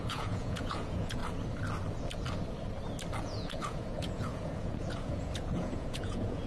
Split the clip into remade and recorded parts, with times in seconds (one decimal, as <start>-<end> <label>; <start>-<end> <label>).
0.0-1.2 remade; 1.2-3.2 recorded; 3.2-6.5 remade